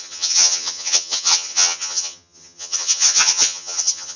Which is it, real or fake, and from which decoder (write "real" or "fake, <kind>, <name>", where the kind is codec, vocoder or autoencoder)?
fake, vocoder, HiFi-GAN